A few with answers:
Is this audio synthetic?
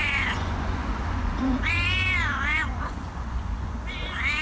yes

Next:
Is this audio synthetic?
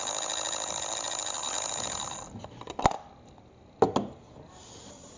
no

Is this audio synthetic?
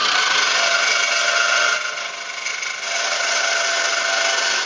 no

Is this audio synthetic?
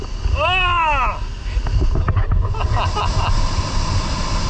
no